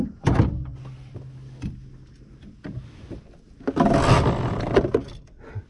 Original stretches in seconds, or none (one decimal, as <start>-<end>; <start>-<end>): 0.0-5.7